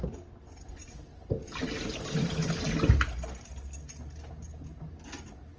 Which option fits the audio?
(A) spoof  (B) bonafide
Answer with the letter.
B